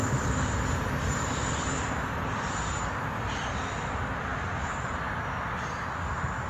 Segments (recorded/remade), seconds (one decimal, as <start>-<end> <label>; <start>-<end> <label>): 0.0-1.9 remade; 1.9-4.3 recorded; 4.3-4.9 remade; 4.9-6.5 recorded